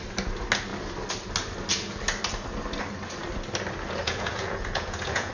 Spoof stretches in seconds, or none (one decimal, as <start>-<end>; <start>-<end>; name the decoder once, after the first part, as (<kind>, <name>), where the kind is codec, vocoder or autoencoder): 4.0-5.3 (vocoder, Vocos)